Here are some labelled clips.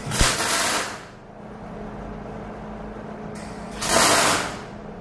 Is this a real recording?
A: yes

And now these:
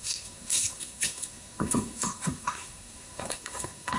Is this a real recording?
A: no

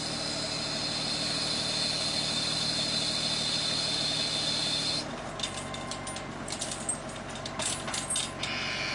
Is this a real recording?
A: yes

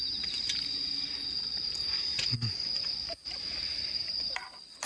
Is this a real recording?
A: yes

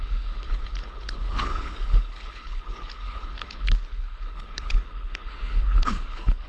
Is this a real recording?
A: no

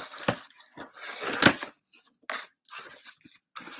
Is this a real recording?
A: yes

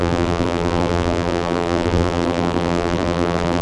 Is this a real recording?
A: no